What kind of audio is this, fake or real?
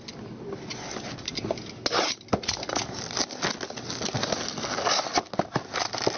real